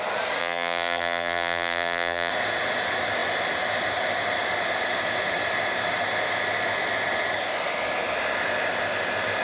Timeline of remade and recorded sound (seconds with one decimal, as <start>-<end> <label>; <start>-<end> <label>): 0.0-0.4 recorded; 0.4-2.3 remade; 2.3-9.4 recorded